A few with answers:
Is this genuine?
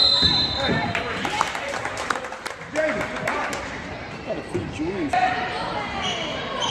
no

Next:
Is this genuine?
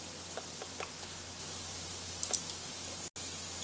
yes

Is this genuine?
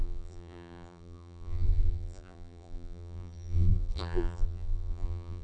no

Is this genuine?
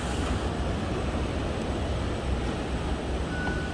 yes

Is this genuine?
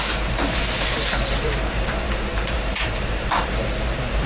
no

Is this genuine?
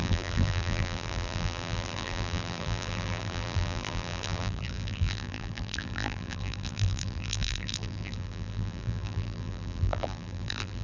no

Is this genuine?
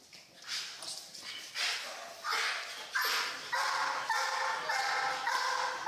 yes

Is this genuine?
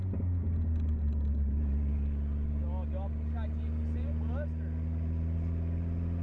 yes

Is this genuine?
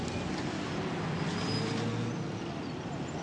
yes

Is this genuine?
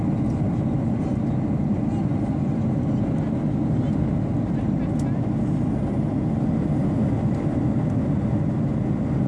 yes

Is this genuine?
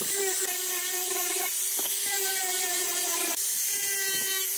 yes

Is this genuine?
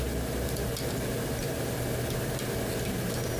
yes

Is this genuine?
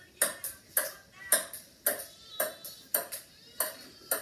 yes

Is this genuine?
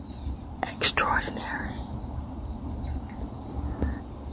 no